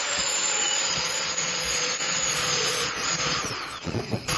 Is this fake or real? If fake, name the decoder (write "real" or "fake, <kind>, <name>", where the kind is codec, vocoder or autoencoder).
fake, vocoder, Vocos